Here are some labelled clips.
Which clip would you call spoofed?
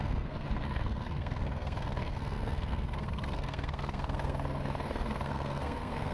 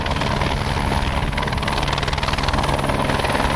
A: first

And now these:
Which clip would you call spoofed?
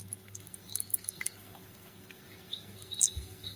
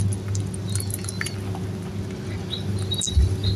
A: first